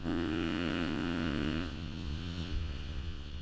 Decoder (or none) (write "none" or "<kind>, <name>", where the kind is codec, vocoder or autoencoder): vocoder, Vocos